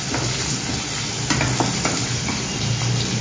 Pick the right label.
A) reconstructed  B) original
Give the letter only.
B